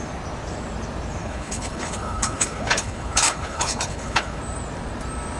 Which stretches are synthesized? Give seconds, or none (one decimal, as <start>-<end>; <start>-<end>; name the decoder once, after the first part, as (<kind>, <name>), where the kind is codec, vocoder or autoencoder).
1.2-4.4 (codec, HILCodec)